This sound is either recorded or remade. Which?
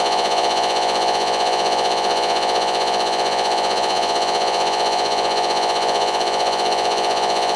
remade